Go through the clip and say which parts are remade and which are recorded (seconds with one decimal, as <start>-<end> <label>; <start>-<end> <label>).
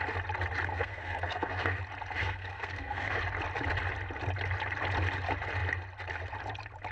0.0-0.7 recorded; 0.7-1.8 remade; 1.8-2.2 recorded; 2.2-3.2 remade; 3.2-6.9 recorded